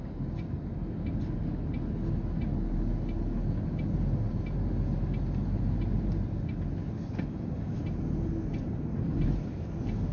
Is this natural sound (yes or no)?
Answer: yes